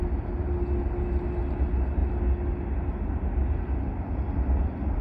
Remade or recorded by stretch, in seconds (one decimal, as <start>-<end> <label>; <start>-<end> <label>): 0.0-5.0 recorded